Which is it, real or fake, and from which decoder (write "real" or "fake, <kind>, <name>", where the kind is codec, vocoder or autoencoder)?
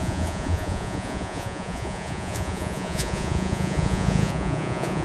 fake, vocoder, Vocos